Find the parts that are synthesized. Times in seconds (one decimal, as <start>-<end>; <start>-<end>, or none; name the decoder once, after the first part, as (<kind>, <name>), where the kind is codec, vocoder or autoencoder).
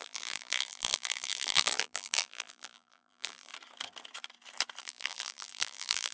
0.0-3.5 (vocoder, BigVGAN v2); 4.8-6.1